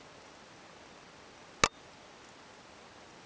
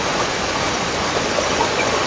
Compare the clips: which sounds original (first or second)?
first